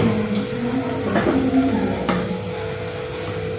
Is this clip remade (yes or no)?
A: no